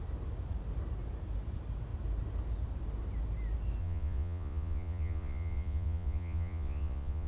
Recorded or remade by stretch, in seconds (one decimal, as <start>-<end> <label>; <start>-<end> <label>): 0.0-3.8 recorded; 3.8-7.3 remade